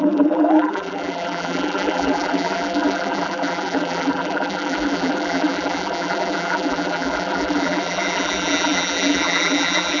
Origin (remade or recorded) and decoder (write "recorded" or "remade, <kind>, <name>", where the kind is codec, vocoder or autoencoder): remade, vocoder, BigVGAN v2